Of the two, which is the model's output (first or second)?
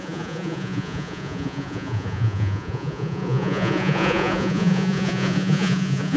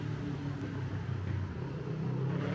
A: first